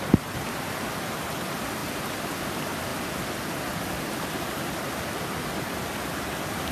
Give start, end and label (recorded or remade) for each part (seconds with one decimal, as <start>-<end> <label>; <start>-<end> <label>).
0.0-1.8 recorded; 1.8-2.4 remade; 2.4-6.7 recorded